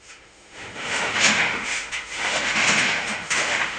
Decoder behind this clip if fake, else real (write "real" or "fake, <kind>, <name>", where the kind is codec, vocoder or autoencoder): fake, autoencoder, DAC-VAE